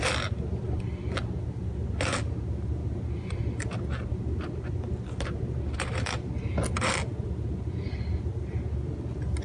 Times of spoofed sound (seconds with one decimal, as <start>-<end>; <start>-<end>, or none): none